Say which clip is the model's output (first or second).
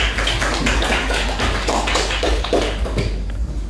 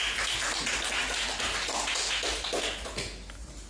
first